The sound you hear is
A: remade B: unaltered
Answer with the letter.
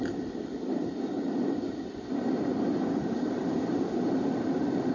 A